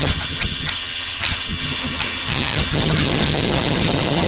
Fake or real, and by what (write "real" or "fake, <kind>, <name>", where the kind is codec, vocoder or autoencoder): fake, vocoder, HiFi-GAN